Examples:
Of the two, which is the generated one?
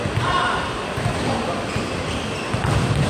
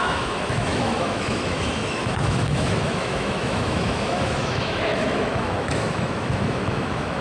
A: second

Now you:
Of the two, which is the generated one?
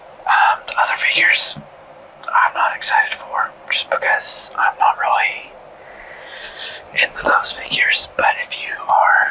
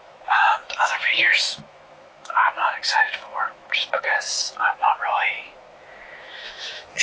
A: second